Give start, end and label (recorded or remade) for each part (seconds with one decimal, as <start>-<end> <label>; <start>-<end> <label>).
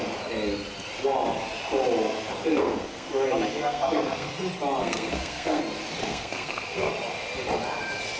0.0-2.5 recorded; 2.5-3.1 remade; 3.1-3.5 recorded; 3.5-4.3 remade; 4.3-4.8 recorded; 4.8-5.6 remade; 5.6-6.0 recorded; 6.0-6.9 remade; 6.9-8.2 recorded